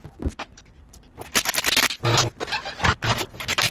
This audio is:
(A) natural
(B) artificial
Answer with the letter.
B